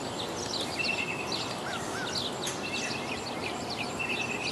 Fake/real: real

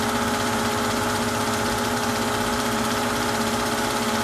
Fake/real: real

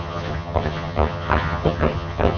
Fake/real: fake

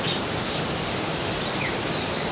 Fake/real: fake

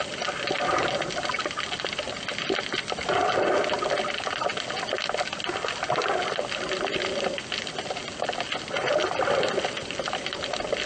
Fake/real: real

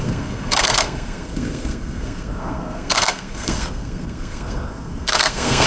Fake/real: fake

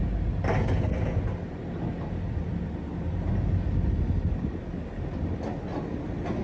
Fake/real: real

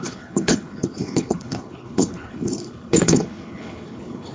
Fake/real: fake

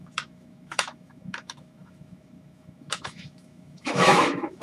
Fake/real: fake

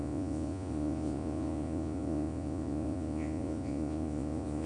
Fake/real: fake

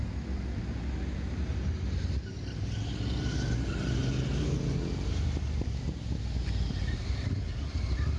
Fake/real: real